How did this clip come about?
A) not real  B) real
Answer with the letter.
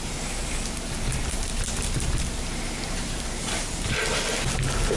B